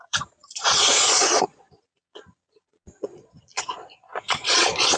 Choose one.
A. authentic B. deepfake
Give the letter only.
B